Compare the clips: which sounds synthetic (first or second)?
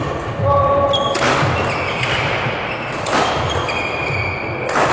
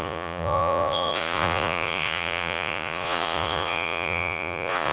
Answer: second